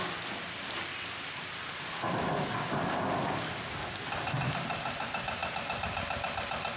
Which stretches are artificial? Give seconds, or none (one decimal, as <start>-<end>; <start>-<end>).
none